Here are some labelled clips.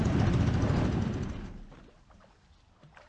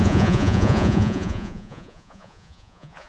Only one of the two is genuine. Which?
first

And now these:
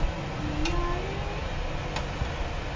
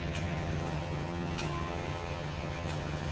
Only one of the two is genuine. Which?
first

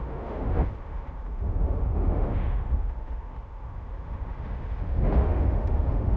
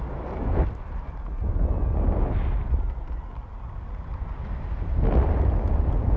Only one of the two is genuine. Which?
second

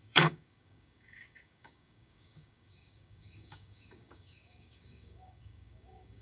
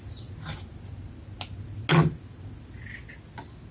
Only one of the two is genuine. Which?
second